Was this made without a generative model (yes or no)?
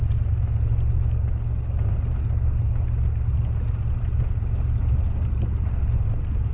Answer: yes